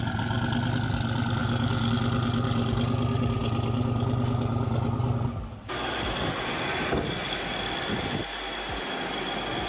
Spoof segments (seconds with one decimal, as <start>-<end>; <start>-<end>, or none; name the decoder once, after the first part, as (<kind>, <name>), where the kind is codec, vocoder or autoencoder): 1.4-1.9 (codec, DAC)